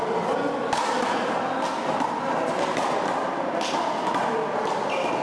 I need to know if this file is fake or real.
real